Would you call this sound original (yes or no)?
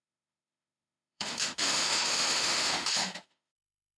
no